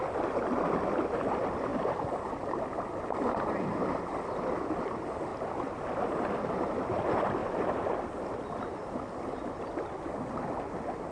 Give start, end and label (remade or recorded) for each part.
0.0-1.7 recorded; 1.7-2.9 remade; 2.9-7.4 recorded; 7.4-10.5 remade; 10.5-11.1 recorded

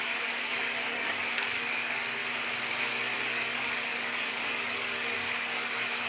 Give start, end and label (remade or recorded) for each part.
0.0-2.2 remade; 2.2-3.2 recorded; 3.2-6.1 remade